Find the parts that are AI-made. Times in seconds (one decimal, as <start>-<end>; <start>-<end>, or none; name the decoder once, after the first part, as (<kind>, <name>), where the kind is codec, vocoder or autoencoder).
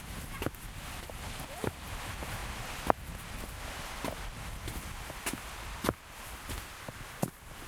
none